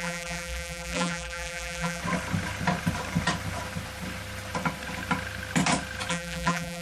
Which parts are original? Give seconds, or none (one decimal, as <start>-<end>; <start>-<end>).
2.0-6.1